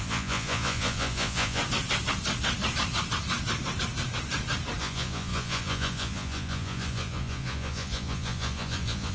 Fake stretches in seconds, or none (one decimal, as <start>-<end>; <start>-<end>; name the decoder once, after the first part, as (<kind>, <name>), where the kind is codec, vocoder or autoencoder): 0.0-1.6 (vocoder, Vocos); 4.8-9.1